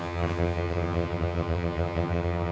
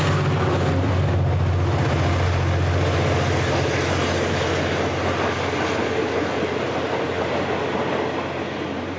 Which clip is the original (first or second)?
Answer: second